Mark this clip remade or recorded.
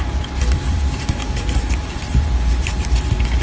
remade